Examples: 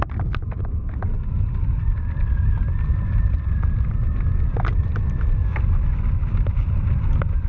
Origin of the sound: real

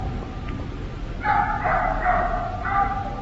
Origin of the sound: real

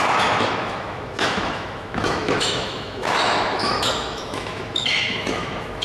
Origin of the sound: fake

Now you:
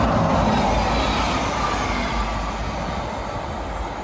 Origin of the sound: real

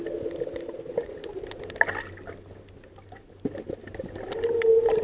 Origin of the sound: real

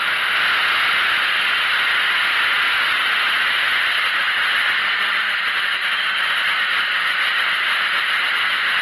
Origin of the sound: real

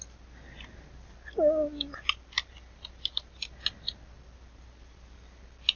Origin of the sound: real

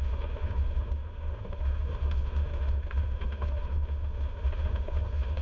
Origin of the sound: fake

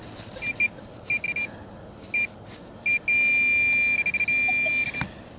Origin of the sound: real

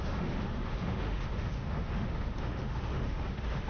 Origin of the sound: fake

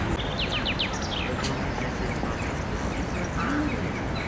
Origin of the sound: real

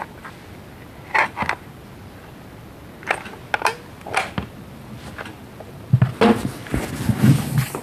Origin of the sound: real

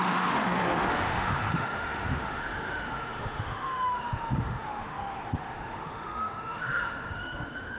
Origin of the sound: fake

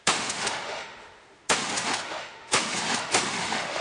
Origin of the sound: fake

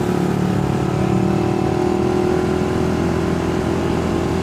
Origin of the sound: real